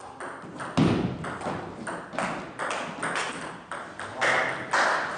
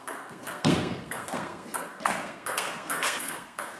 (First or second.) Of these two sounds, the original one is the first